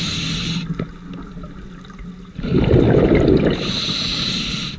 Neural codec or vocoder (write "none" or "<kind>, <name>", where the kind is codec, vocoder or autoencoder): none